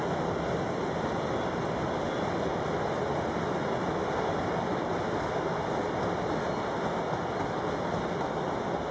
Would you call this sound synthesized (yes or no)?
no